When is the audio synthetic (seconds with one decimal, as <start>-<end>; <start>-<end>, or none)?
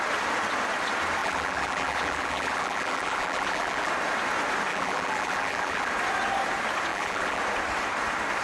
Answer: 1.2-3.9; 4.7-5.9; 6.9-7.4